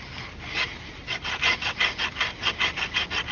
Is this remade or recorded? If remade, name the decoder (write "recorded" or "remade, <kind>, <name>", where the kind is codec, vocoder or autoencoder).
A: recorded